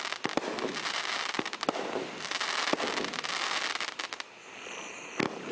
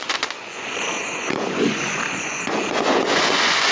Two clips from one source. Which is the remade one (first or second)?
second